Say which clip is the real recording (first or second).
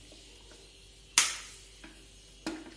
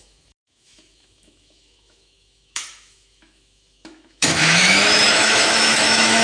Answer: first